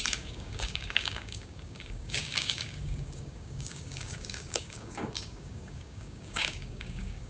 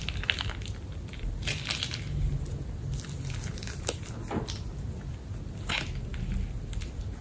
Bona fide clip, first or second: second